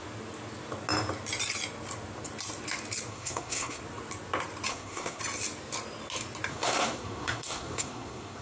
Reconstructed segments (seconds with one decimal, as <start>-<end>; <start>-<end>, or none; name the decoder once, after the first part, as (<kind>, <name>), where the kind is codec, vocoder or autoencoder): 3.1-3.8 (codec, SNAC); 4.7-5.2; 6.5-8.4